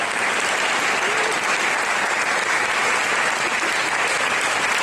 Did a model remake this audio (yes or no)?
no